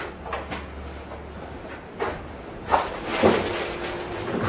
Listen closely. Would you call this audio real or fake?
real